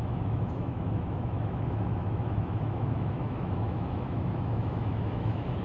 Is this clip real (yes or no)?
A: no